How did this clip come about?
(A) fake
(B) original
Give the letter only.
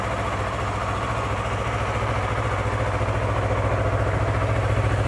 B